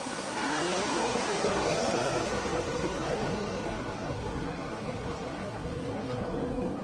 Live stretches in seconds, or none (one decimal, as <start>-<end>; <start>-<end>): none